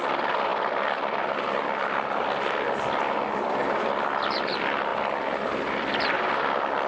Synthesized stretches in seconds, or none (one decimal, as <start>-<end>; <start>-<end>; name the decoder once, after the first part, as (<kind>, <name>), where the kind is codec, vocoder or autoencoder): none